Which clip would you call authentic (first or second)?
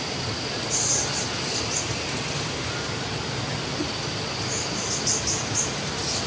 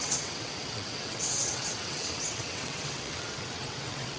first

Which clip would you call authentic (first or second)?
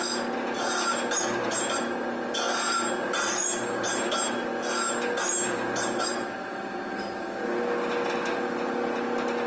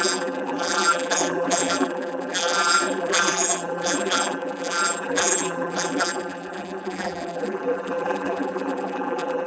first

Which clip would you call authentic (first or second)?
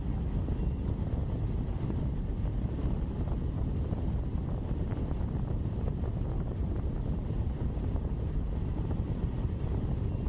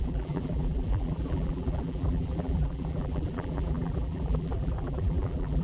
first